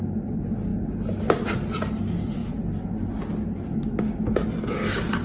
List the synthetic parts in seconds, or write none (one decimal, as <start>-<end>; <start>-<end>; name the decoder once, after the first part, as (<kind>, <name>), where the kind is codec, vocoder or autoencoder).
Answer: none

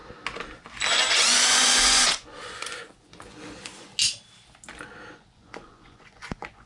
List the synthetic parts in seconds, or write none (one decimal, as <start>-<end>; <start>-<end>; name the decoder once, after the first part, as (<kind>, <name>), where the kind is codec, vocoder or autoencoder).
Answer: 0.9-3.9 (vocoder, Vocos); 5.1-6.7

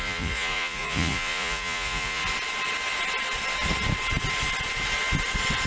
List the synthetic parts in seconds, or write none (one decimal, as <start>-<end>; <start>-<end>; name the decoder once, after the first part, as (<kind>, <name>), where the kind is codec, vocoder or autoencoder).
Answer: 0.0-2.2 (vocoder, Vocos)

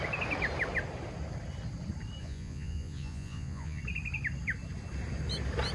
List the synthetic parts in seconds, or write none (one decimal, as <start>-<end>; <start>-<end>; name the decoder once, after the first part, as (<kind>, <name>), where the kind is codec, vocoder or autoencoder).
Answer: 2.2-3.8 (vocoder, Vocos)